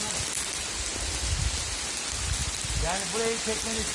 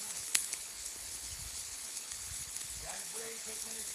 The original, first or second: first